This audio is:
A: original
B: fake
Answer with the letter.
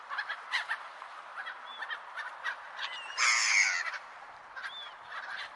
A